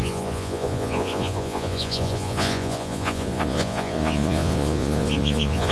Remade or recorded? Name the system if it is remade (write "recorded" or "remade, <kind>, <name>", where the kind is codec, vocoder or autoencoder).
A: remade, vocoder, Vocos